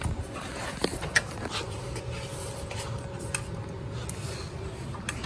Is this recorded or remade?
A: recorded